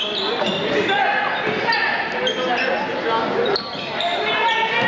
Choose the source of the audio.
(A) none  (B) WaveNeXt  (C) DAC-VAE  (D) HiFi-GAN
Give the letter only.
A